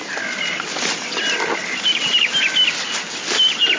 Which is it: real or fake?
real